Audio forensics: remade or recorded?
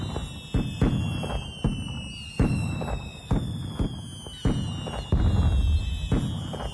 recorded